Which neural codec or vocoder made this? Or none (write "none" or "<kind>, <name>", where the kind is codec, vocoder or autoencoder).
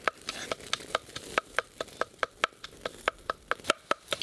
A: none